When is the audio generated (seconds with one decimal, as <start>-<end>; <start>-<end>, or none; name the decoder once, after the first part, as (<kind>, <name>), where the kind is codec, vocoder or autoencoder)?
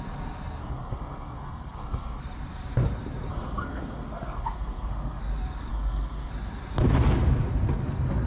0.6-2.2 (codec, SNAC); 3.3-5.2; 5.7-6.3